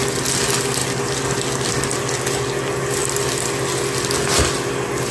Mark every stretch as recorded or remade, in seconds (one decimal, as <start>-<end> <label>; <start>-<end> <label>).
0.0-5.1 recorded